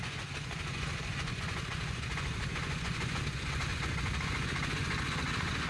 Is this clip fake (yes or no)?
yes